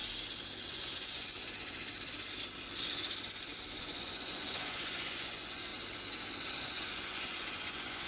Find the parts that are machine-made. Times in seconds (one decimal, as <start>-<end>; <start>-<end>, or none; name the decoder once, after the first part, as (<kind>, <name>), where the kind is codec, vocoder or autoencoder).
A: 0.7-1.8 (vocoder, Vocos); 3.8-5.7; 6.5-8.1